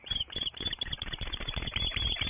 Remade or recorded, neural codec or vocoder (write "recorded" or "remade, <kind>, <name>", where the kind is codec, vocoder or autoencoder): remade, vocoder, BigVGAN v2